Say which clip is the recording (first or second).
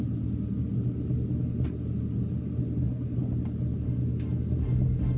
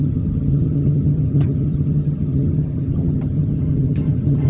first